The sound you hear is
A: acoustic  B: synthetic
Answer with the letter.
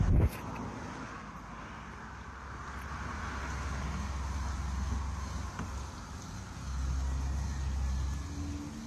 A